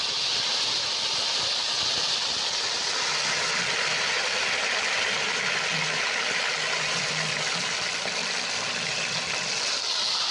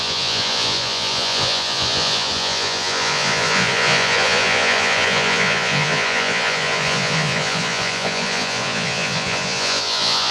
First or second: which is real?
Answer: first